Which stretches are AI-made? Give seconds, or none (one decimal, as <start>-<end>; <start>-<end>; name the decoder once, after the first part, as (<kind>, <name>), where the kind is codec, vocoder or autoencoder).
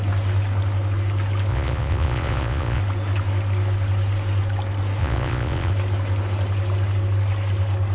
1.5-2.8 (vocoder, Vocos); 5.0-5.7